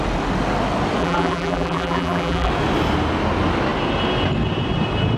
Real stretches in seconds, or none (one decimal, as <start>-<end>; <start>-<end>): 0.0-1.0; 2.5-5.2